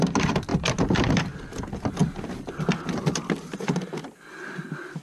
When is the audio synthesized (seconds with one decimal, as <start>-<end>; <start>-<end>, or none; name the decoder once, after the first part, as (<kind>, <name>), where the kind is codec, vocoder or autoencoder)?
none